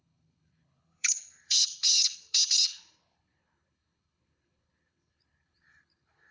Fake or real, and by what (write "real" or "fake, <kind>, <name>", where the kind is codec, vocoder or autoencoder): fake, codec, HILCodec